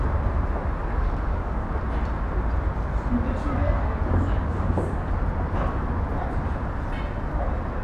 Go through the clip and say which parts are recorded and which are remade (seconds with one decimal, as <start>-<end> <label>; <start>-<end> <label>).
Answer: 0.0-0.8 recorded; 0.8-1.8 remade; 1.8-3.6 recorded; 3.6-5.1 remade; 5.1-7.8 recorded